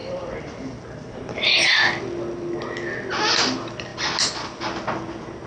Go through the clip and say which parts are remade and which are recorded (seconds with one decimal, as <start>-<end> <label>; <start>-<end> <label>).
0.0-2.0 remade; 2.0-5.5 recorded